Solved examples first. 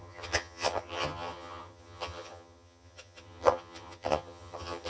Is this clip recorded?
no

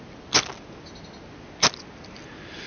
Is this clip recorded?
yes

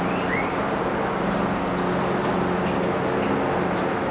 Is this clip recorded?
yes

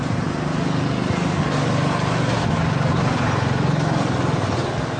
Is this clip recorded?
yes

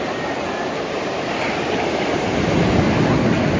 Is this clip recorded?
yes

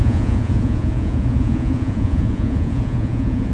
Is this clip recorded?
no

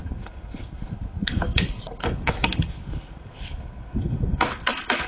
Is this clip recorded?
no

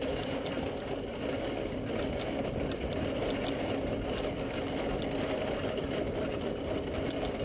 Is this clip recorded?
yes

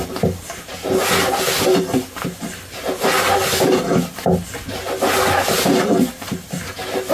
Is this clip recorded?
yes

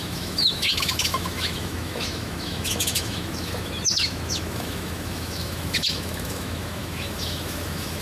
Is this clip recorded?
no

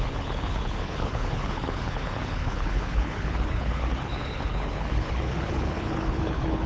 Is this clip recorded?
no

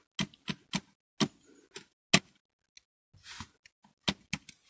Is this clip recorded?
yes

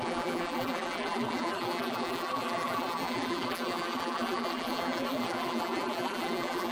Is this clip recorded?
no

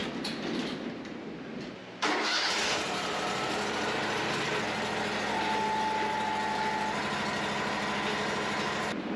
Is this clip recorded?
yes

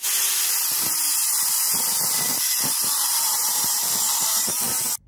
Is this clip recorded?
no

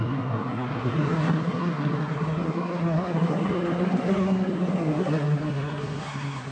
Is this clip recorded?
no